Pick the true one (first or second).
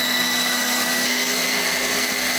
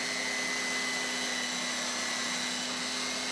second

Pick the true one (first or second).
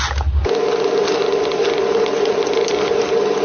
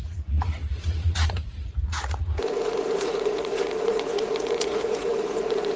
first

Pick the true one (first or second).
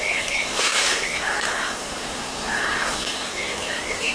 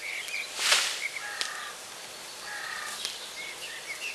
second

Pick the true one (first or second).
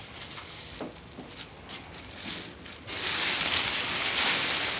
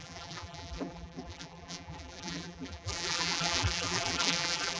first